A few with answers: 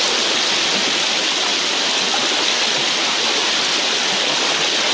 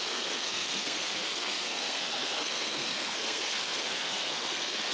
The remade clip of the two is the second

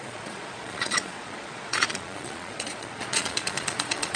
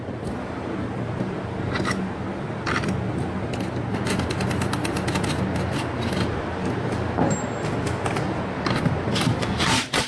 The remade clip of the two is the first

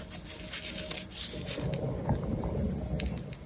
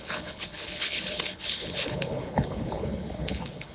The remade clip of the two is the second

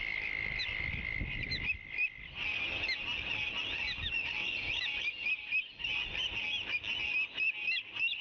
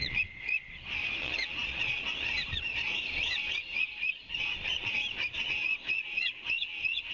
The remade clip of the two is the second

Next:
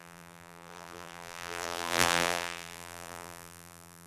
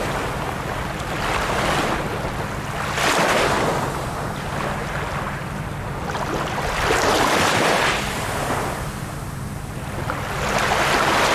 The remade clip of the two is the first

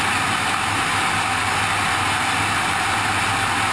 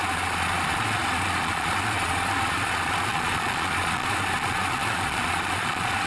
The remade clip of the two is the second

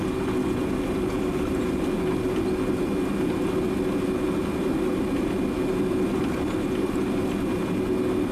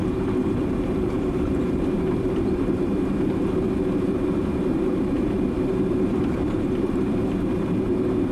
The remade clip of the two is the second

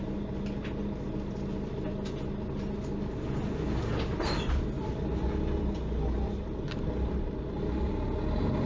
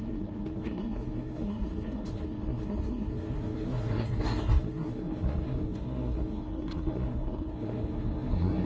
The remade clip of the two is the second